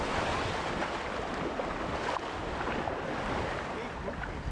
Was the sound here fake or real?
fake